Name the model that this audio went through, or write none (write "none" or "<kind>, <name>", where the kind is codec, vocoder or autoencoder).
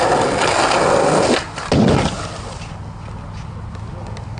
none